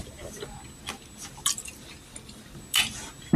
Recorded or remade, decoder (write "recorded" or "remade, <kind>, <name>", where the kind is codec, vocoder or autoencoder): recorded